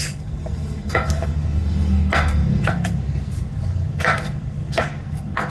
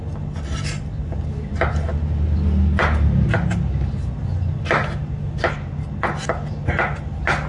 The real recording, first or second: second